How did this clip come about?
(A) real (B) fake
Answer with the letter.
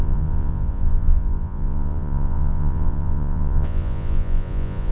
B